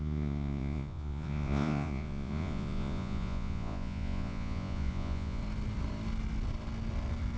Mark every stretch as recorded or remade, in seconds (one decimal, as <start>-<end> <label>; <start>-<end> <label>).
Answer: 0.0-5.4 remade; 5.4-7.4 recorded